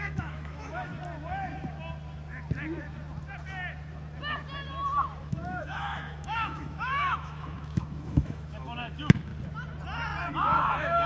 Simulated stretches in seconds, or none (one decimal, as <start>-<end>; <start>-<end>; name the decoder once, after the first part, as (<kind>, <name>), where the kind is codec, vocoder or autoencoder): 0.0-0.9 (autoencoder, DAC-VAE); 5.2-9.3; 10.3-11.1